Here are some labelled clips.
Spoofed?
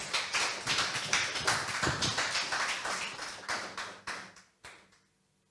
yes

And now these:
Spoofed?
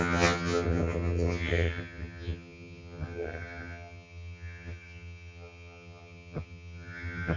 yes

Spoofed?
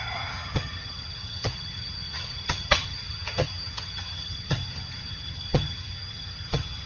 yes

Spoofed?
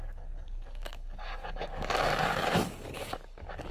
yes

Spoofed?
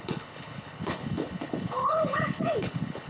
yes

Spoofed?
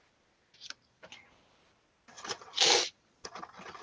no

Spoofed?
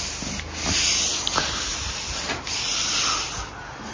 no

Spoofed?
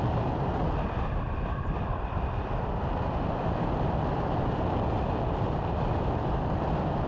yes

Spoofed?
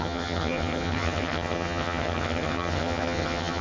yes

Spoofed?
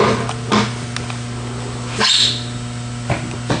no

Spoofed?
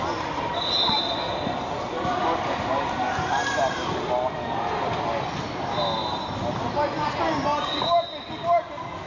no